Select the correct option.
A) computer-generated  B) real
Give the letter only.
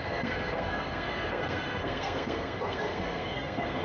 A